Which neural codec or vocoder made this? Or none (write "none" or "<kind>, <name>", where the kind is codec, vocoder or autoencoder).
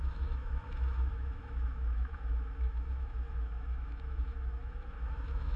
autoencoder, DAC-VAE